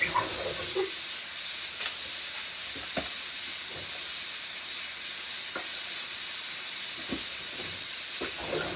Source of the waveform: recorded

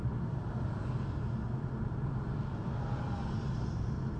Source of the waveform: recorded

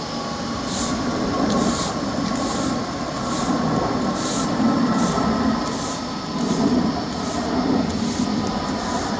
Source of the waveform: recorded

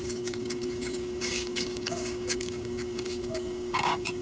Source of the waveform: remade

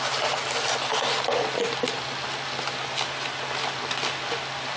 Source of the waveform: recorded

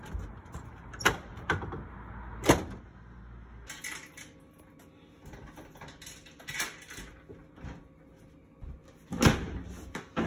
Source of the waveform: recorded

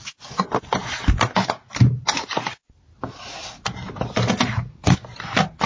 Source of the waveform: recorded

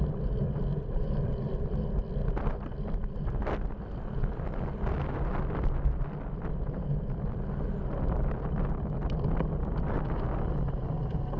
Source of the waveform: recorded